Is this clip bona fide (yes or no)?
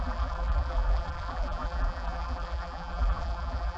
no